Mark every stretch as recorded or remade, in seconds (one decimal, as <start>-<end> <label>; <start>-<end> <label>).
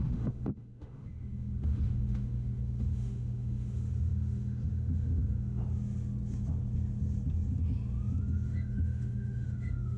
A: 0.0-5.6 remade; 5.6-8.2 recorded; 8.2-10.0 remade